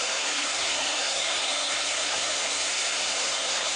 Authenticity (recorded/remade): remade